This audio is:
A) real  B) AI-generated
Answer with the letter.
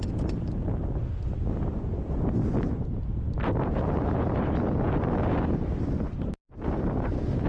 A